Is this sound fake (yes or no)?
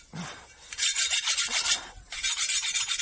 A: no